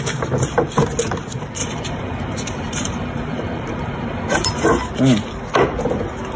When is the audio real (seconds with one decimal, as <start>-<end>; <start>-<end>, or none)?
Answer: 0.0-1.6; 4.7-6.4